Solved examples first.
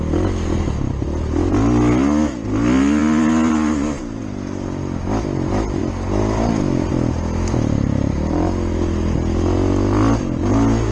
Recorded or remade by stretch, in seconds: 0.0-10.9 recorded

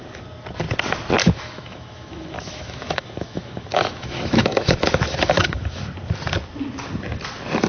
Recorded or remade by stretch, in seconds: 0.0-1.2 recorded; 1.2-5.8 remade; 5.8-7.7 recorded

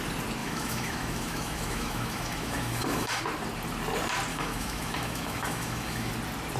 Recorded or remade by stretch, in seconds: 0.0-0.4 recorded; 0.4-3.2 remade; 3.2-4.3 recorded; 4.3-6.1 remade; 6.1-6.6 recorded